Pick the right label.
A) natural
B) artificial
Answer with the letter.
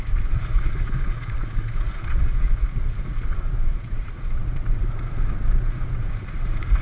B